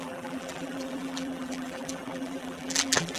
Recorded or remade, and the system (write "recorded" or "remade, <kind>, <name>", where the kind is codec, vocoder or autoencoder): remade, vocoder, BigVGAN v2